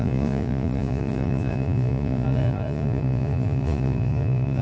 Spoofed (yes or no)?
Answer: yes